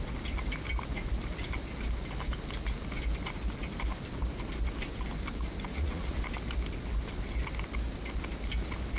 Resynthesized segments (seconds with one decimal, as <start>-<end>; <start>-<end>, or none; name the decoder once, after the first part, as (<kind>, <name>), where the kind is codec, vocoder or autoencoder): 5.7-6.2 (vocoder, Vocos)